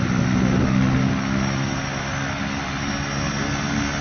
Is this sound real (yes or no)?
yes